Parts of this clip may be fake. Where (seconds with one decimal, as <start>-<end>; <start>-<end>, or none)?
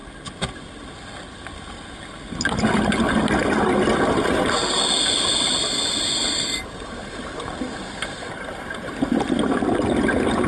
none